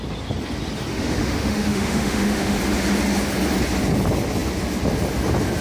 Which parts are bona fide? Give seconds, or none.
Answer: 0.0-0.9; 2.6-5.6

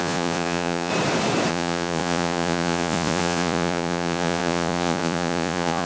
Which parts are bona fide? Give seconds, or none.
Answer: 0.9-1.5

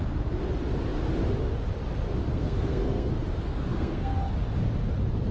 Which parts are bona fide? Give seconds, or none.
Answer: 0.0-2.3; 3.1-3.5; 4.2-5.3